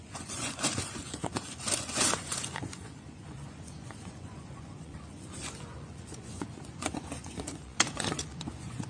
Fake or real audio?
fake